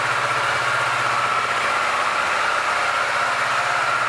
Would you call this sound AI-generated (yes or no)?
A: no